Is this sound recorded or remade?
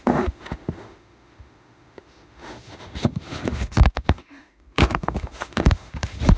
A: remade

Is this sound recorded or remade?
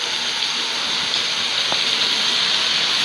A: recorded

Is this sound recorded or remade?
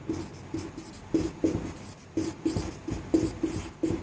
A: recorded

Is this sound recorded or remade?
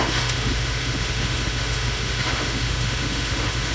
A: remade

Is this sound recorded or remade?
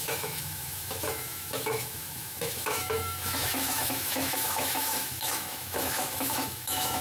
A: remade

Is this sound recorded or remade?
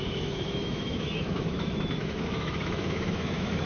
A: remade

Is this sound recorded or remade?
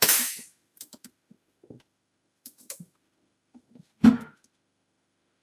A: remade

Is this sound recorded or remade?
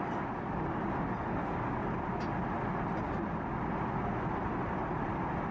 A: recorded